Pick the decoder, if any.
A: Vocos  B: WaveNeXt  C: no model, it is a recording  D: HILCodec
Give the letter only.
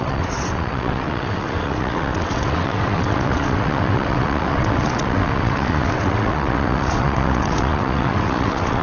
B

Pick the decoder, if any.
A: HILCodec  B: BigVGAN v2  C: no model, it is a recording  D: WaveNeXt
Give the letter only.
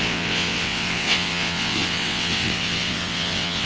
D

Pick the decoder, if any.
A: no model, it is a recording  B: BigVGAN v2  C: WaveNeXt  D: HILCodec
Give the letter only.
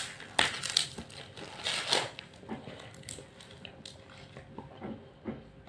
A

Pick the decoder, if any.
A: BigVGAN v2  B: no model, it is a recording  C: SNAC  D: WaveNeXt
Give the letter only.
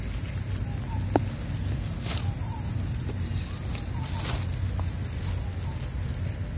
B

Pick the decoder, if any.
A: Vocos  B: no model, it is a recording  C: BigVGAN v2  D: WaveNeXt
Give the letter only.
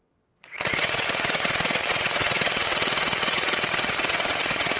D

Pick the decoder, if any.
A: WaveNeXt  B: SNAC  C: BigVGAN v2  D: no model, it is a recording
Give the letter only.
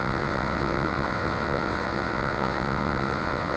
A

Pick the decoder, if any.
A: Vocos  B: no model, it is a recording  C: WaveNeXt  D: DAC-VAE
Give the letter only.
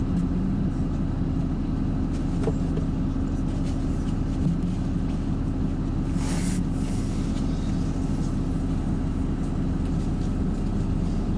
B